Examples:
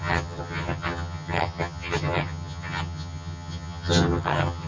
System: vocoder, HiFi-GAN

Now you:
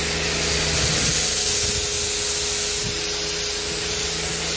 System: none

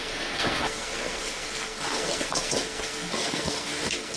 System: codec, SNAC